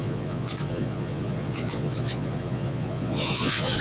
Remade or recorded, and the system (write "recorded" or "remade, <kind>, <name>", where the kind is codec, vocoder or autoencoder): remade, vocoder, Vocos